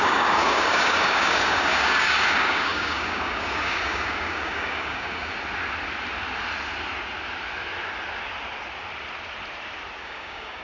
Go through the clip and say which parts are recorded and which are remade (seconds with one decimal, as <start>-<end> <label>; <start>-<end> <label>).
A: 0.0-5.3 remade; 5.3-10.0 recorded; 10.0-10.6 remade